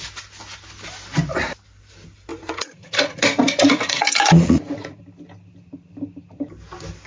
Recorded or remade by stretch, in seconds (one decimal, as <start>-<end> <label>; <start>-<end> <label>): 0.0-2.3 recorded; 2.3-5.0 remade; 5.0-7.1 recorded